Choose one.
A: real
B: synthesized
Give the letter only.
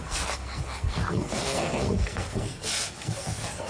B